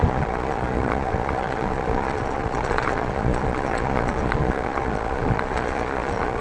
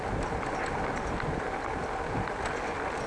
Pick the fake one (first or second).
first